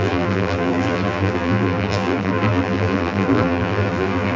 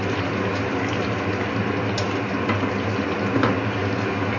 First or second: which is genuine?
second